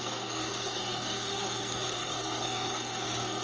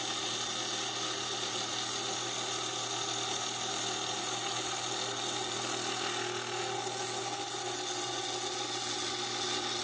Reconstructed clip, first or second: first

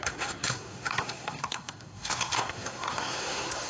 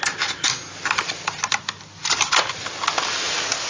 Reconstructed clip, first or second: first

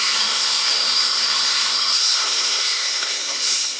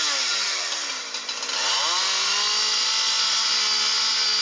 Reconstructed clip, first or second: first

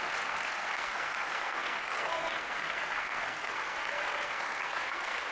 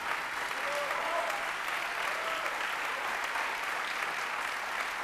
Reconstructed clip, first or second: first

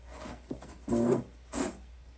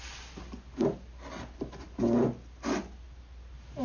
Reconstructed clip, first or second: first